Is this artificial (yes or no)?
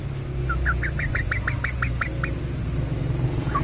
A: no